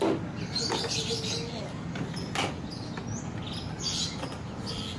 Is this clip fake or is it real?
real